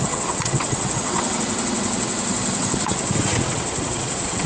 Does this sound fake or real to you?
fake